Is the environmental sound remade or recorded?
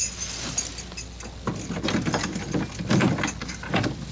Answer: recorded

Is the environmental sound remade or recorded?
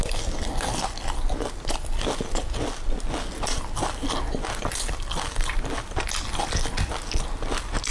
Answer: recorded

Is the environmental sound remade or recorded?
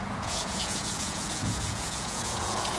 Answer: remade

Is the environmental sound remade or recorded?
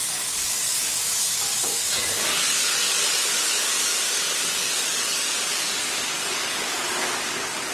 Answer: remade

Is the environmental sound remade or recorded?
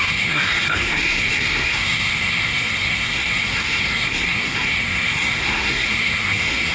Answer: remade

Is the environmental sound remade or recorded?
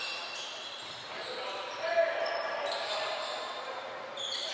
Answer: remade